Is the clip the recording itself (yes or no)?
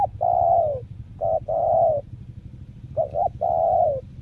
yes